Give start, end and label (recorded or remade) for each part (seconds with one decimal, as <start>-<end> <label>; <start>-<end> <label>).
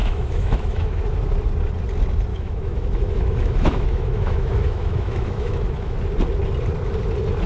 0.0-1.0 remade; 1.0-2.3 recorded; 2.3-6.0 remade; 6.0-7.5 recorded